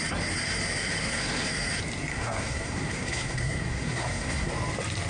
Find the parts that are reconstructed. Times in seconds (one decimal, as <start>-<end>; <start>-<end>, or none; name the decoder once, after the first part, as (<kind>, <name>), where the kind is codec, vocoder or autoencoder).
1.0-1.5 (codec, SNAC); 2.1-4.5